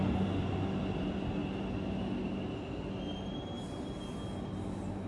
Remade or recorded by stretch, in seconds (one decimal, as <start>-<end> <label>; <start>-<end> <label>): 0.0-5.1 recorded